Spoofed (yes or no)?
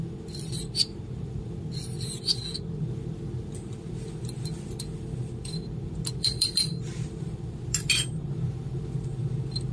yes